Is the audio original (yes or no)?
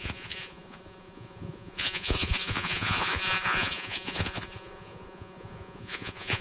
no